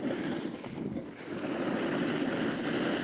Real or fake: real